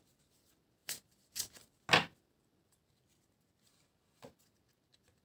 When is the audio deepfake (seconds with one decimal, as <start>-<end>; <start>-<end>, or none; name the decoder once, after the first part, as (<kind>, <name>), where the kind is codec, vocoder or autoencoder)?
none